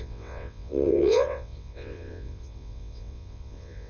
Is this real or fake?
fake